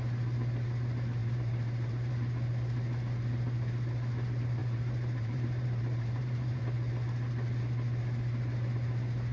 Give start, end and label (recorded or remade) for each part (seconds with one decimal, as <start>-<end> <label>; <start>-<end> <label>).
0.0-1.2 recorded; 1.2-2.1 remade; 2.1-4.6 recorded; 4.6-6.6 remade; 6.6-9.3 recorded